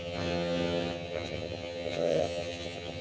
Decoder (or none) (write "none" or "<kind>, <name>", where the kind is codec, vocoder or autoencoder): vocoder, HiFi-GAN